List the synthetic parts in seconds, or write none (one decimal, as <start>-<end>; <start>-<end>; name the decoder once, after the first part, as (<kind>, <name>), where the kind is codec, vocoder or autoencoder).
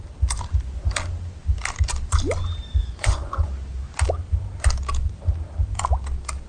2.8-3.5 (vocoder, Vocos)